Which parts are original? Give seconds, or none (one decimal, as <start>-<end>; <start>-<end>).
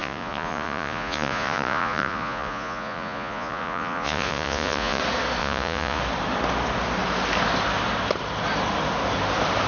5.0-5.4; 6.0-9.7